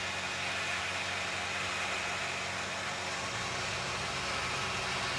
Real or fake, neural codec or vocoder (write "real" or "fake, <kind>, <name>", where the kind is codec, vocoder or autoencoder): real